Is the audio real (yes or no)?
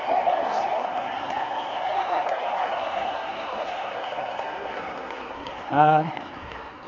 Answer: no